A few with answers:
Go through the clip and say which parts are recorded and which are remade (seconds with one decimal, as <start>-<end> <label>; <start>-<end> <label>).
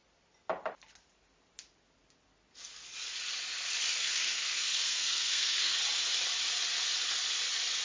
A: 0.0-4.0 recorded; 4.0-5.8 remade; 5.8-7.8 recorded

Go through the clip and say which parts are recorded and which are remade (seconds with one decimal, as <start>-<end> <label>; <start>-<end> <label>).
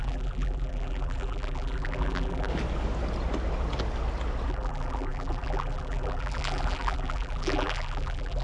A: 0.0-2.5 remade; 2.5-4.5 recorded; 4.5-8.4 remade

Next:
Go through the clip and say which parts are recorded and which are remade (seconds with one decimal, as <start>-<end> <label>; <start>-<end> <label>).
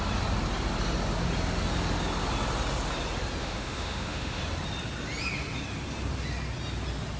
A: 0.0-3.4 recorded; 3.4-4.4 remade; 4.4-7.2 recorded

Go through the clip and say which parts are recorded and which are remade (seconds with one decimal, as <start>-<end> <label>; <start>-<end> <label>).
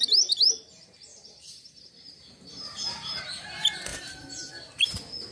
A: 0.0-1.1 recorded; 1.1-3.5 remade; 3.5-3.9 recorded; 3.9-4.5 remade; 4.5-5.3 recorded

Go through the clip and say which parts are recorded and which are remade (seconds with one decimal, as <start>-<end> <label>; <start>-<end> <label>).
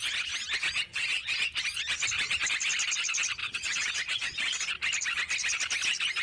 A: 0.0-0.9 recorded; 0.9-1.4 remade; 1.4-3.4 recorded; 3.4-4.7 remade; 4.7-6.2 recorded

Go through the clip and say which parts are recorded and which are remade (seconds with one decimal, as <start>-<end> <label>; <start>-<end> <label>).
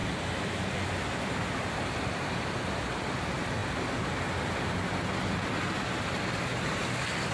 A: 0.0-7.3 recorded